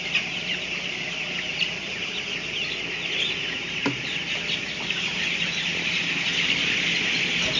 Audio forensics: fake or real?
real